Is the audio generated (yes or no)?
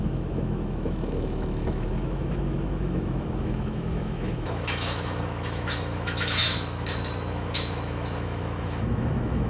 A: yes